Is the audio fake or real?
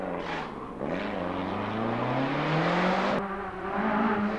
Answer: real